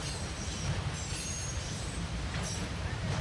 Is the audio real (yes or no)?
no